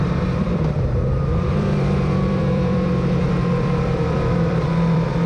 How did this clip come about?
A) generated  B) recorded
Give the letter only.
A